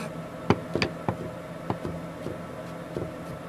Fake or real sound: real